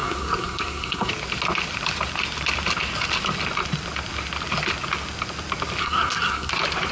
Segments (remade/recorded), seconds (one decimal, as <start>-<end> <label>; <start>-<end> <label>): 0.0-1.1 remade; 1.1-5.8 recorded; 5.8-6.5 remade; 6.5-6.9 recorded